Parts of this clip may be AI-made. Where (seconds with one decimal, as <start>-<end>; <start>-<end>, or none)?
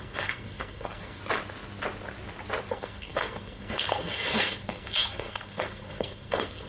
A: 0.0-1.2; 2.7-6.7